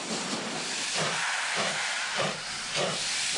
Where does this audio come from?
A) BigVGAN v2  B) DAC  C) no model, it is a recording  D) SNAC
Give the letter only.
A